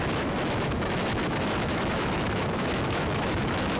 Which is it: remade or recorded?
remade